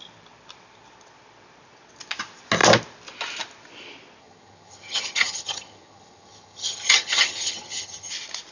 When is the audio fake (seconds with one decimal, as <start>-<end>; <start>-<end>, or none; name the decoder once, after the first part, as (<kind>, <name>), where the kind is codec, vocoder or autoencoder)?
4.2-8.1 (vocoder, HiFi-GAN)